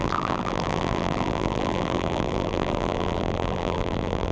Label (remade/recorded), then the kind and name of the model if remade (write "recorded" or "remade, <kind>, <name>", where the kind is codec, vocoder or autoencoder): remade, vocoder, BigVGAN v2